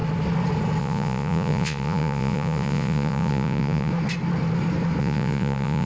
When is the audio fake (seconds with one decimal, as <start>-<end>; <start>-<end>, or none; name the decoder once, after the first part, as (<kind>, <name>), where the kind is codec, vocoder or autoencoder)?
0.8-3.9 (vocoder, Vocos); 5.0-5.9